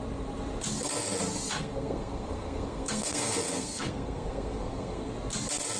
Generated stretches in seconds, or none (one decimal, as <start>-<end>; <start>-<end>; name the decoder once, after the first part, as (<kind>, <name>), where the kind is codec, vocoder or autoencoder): 1.6-5.1 (codec, SNAC)